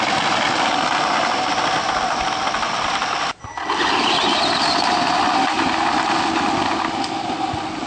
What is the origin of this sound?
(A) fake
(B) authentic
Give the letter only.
B